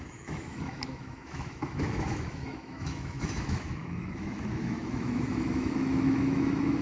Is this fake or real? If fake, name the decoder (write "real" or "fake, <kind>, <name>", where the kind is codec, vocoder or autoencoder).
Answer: fake, autoencoder, DAC-VAE